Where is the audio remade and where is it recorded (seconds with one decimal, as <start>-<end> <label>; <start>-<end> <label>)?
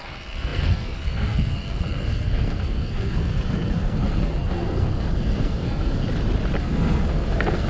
0.0-6.0 remade; 6.0-6.6 recorded; 6.6-7.7 remade